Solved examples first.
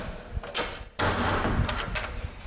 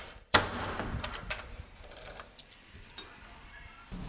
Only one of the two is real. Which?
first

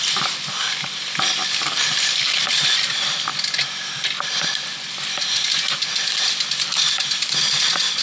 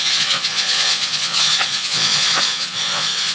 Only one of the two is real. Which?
first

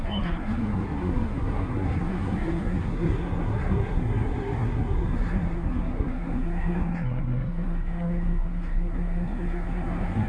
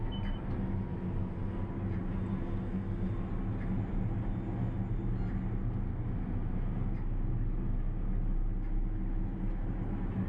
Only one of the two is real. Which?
second